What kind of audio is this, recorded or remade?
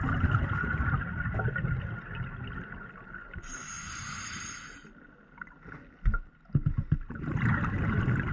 recorded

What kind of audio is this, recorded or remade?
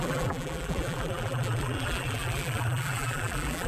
remade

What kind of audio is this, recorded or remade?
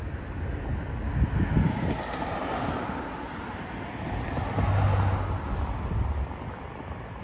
recorded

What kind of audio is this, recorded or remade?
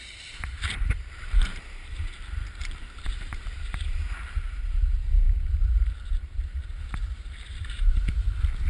remade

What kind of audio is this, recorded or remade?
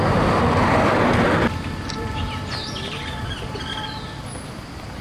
remade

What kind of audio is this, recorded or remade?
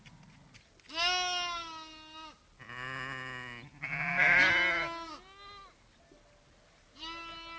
recorded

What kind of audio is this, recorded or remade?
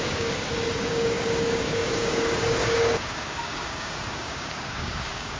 remade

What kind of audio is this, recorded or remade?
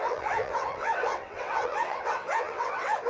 remade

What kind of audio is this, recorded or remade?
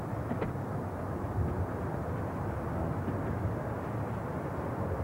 recorded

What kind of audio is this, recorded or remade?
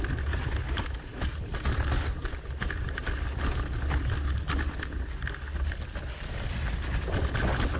recorded